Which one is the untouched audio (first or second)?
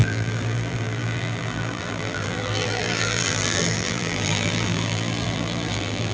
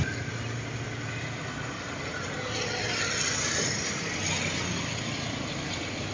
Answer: second